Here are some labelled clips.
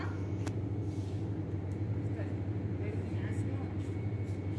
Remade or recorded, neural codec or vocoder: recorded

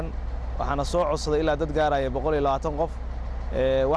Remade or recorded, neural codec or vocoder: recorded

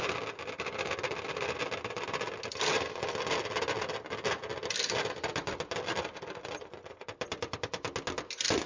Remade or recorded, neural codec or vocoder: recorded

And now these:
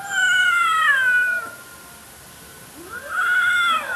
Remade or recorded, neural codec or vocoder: recorded